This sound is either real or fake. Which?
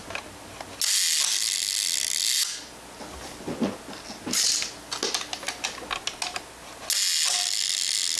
real